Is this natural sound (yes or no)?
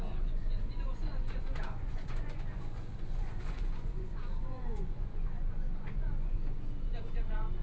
no